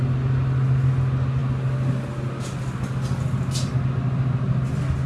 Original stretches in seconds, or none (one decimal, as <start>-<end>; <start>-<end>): 0.0-5.1